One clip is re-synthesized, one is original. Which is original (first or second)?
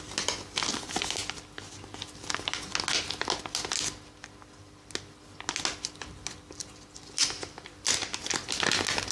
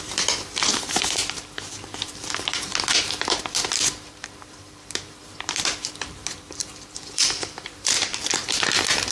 first